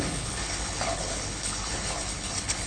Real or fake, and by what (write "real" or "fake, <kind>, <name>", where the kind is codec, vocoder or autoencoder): fake, codec, HILCodec